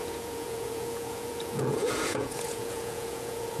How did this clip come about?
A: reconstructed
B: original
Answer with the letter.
A